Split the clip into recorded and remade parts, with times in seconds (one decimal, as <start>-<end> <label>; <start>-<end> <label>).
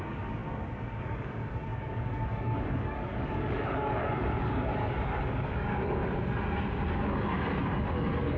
0.0-0.4 remade; 0.4-1.0 recorded; 1.0-6.0 remade; 6.0-6.9 recorded; 6.9-8.4 remade